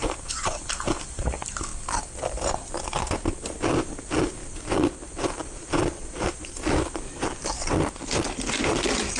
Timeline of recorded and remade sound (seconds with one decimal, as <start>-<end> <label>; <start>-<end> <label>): 0.0-9.2 recorded